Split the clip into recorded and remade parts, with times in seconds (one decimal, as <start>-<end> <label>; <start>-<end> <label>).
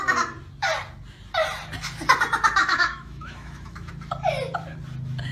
0.0-2.6 recorded; 2.6-3.9 remade; 3.9-5.3 recorded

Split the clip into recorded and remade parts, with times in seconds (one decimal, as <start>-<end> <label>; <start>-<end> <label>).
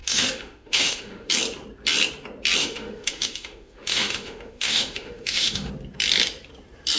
0.0-1.3 remade; 1.3-2.6 recorded; 2.6-5.7 remade; 5.7-7.0 recorded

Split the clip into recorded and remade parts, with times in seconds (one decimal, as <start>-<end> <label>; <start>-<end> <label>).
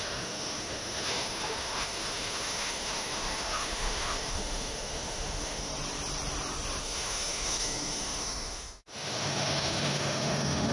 0.0-5.7 remade; 5.7-6.8 recorded; 6.8-10.7 remade